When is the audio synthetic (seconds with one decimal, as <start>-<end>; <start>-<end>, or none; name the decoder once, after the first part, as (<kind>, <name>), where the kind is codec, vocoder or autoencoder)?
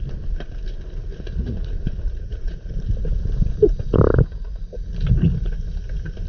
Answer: 1.3-2.7 (vocoder, Vocos)